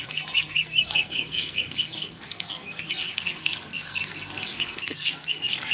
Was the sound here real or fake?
fake